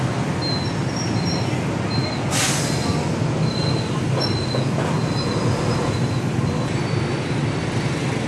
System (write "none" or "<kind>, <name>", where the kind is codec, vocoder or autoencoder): none